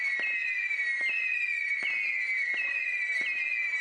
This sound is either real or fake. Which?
real